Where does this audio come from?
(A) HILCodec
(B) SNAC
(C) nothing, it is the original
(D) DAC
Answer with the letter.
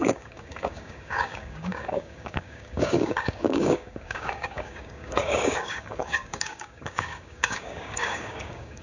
D